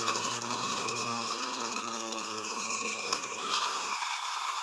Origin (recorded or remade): remade